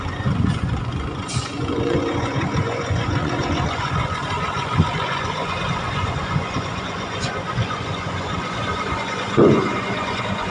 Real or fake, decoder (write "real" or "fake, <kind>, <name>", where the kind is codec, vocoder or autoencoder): fake, vocoder, Vocos